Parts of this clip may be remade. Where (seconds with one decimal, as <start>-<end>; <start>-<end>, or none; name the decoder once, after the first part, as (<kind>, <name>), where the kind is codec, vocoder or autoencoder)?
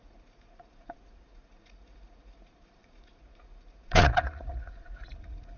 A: 0.0-5.6 (vocoder, Vocos)